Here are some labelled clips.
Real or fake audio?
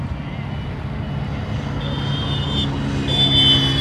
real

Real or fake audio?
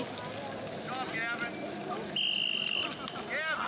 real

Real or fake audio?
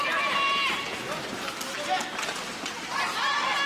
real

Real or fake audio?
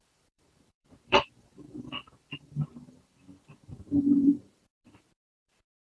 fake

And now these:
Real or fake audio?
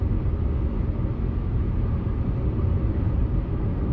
real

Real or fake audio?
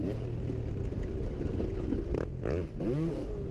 real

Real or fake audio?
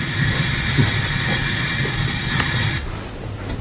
real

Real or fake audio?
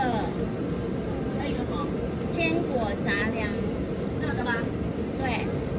fake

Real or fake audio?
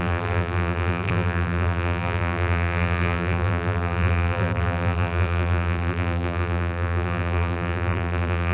fake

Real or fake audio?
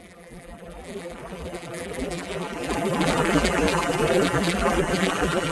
fake